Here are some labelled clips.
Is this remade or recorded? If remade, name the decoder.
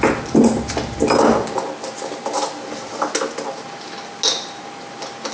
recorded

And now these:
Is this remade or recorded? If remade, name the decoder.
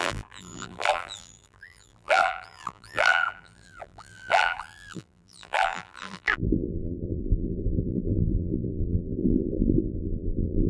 remade, vocoder, BigVGAN v2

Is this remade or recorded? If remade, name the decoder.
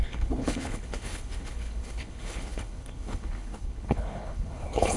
remade, codec, HILCodec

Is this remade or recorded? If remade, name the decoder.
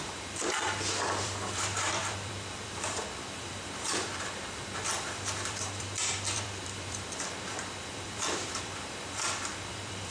remade, vocoder, BigVGAN v2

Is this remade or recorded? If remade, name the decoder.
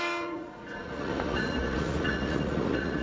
remade, vocoder, Vocos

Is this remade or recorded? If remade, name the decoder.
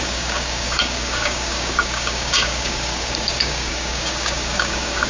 remade, codec, DAC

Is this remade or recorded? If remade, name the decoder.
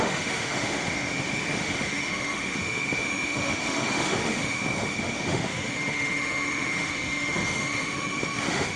remade, autoencoder, DAC-VAE